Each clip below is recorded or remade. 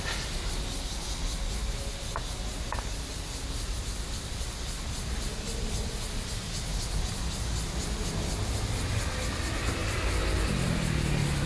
recorded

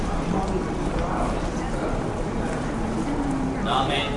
recorded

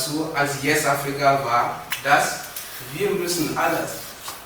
recorded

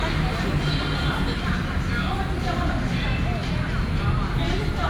recorded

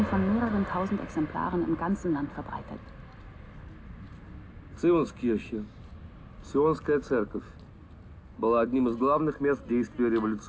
recorded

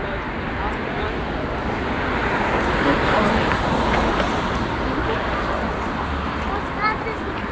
recorded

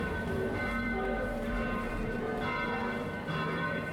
remade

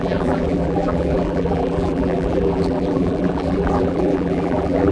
remade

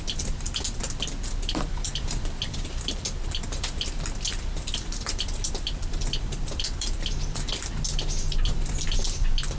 remade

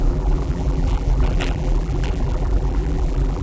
remade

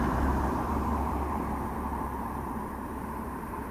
remade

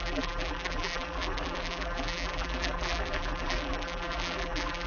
remade